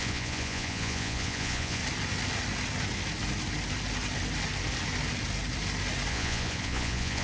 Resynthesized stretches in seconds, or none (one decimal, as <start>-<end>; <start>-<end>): 0.0-1.8; 6.1-7.2